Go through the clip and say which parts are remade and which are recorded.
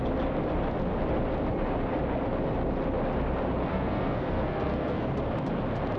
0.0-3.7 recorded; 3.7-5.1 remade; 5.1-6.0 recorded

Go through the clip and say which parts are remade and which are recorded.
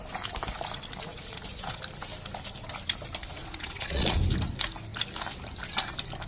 0.0-1.1 recorded; 1.1-1.8 remade; 1.8-3.2 recorded; 3.2-4.2 remade; 4.2-6.3 recorded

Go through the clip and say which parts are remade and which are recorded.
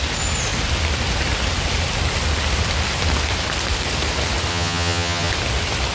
0.0-4.5 recorded; 4.5-5.3 remade; 5.3-5.9 recorded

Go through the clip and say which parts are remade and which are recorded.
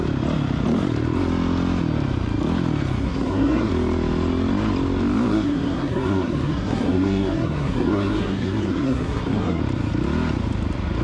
0.0-3.0 recorded; 3.0-3.7 remade; 3.7-5.3 recorded; 5.3-9.6 remade; 9.6-11.0 recorded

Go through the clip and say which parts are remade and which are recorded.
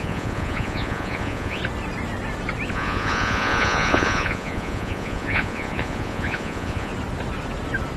0.0-1.6 remade; 1.6-2.7 recorded; 2.7-6.9 remade; 6.9-8.0 recorded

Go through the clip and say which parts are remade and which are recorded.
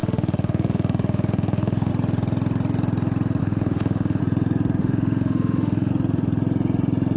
0.0-1.9 remade; 1.9-3.4 recorded; 3.4-4.2 remade; 4.2-4.8 recorded; 4.8-5.9 remade; 5.9-7.2 recorded